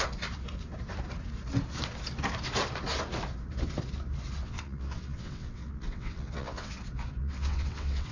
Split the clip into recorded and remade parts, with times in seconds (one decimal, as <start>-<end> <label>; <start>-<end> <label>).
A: 0.0-4.4 recorded; 4.4-6.7 remade; 6.7-7.2 recorded; 7.2-8.1 remade